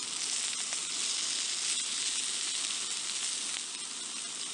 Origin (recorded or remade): recorded